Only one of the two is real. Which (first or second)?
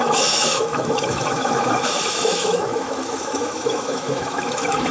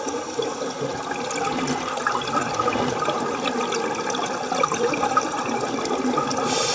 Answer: second